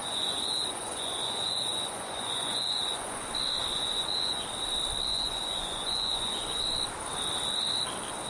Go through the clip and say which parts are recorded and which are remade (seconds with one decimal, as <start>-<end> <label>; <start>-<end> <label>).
0.0-3.3 remade; 3.3-3.7 recorded; 3.7-4.4 remade; 4.4-5.1 recorded; 5.1-6.6 remade; 6.6-8.3 recorded